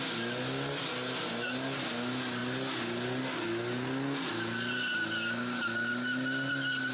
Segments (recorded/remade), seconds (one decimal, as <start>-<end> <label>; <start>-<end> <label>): 0.0-6.9 recorded

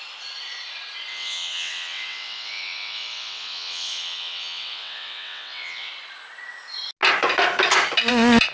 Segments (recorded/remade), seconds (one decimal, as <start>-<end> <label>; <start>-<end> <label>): 0.0-1.1 recorded; 1.1-5.9 remade; 5.9-8.5 recorded